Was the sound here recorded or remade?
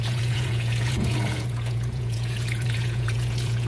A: remade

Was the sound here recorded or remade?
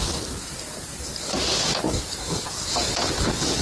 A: recorded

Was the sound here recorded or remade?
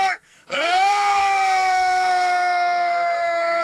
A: remade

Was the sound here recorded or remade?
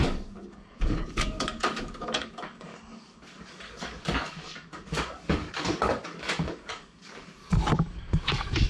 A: remade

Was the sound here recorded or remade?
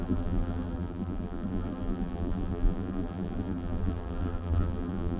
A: remade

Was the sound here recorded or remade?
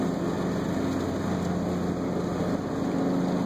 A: recorded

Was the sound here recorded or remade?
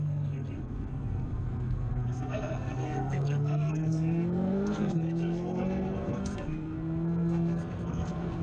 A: remade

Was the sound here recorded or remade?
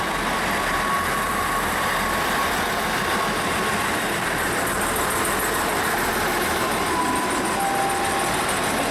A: recorded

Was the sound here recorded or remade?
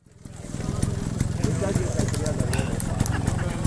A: recorded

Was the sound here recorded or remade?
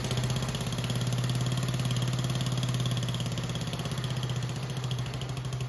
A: recorded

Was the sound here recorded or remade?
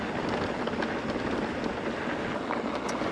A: recorded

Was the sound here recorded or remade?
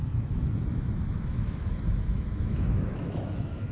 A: remade